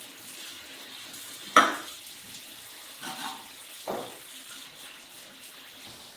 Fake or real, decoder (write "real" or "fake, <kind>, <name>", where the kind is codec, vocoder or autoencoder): real